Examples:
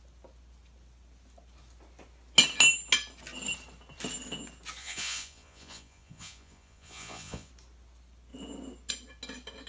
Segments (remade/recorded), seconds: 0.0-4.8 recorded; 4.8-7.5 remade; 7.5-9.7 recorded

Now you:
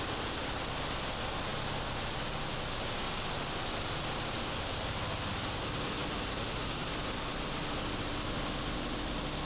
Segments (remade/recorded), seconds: 0.0-9.5 recorded